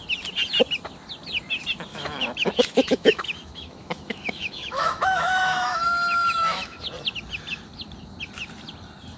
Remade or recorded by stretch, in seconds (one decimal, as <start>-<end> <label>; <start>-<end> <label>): 0.0-1.9 recorded; 1.9-6.8 remade; 6.8-9.2 recorded